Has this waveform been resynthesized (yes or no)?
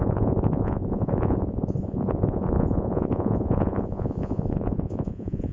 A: yes